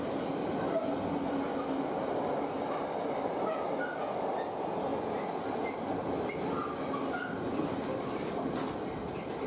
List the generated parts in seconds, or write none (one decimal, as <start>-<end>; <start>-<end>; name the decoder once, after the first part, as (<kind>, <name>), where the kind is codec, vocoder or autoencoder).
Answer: none